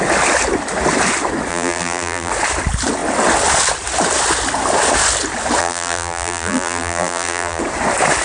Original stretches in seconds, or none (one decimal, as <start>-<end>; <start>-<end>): 0.0-1.5; 2.3-5.6; 7.6-8.2